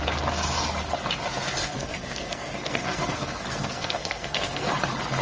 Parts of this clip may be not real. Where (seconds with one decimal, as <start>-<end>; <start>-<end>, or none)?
1.6-4.7

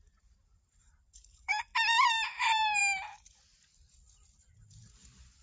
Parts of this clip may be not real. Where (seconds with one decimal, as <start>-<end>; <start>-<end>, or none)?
0.0-1.7; 2.4-2.8; 4.4-5.4

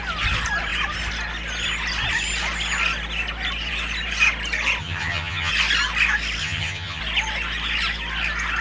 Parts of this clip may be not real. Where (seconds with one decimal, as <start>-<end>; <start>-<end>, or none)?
4.8-5.5; 6.4-7.0